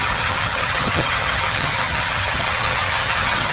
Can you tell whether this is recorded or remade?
remade